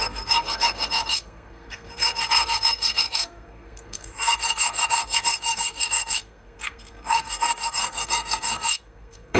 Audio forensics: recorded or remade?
remade